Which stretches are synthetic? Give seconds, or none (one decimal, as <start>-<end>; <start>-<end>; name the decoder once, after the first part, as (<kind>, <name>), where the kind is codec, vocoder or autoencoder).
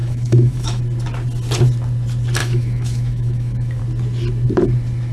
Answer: 0.0-0.8 (autoencoder, DAC-VAE); 2.4-3.8